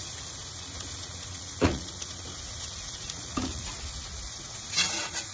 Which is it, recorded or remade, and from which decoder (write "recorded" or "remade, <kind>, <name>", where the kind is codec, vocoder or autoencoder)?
remade, vocoder, Vocos